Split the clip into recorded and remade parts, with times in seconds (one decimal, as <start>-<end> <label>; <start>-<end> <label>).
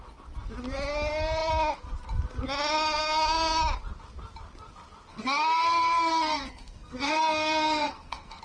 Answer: 0.0-5.1 recorded; 5.1-8.4 remade